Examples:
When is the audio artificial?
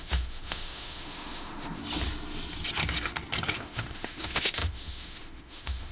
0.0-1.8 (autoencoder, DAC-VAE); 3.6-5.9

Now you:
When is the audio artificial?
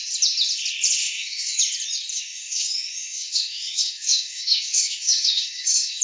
1.0-1.6 (autoencoder, DAC-VAE); 2.1-6.0